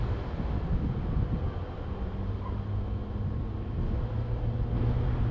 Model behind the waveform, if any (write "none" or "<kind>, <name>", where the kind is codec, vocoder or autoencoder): none